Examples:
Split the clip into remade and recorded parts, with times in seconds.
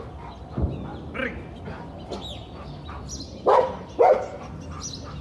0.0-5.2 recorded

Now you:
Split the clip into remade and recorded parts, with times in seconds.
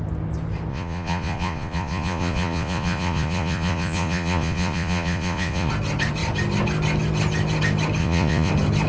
0.0-0.7 recorded; 0.7-5.7 remade; 5.7-8.0 recorded; 8.0-8.5 remade; 8.5-8.9 recorded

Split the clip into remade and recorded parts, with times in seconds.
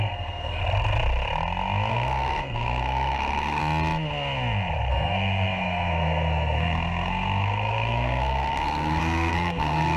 0.0-0.6 remade; 0.6-1.9 recorded; 1.9-3.6 remade; 3.6-4.9 recorded; 4.9-10.0 remade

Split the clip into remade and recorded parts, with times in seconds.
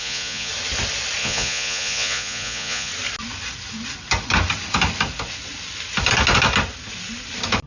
0.0-0.5 remade; 0.5-1.2 recorded; 1.2-2.9 remade; 2.9-7.7 recorded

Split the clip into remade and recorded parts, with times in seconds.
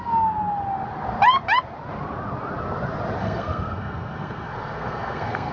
0.0-3.2 recorded; 3.2-5.5 remade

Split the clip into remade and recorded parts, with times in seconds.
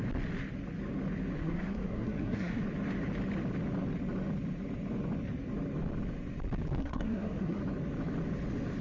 0.0-1.4 recorded; 1.4-2.6 remade; 2.6-6.8 recorded; 6.8-7.6 remade; 7.6-8.8 recorded